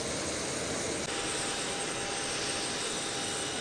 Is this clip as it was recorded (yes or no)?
yes